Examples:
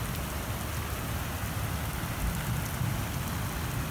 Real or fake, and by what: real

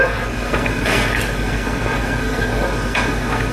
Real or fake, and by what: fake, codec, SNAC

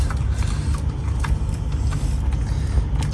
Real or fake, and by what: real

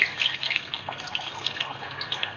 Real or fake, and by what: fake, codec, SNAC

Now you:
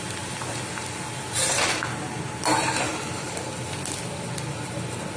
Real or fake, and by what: real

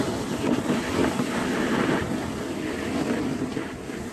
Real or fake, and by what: real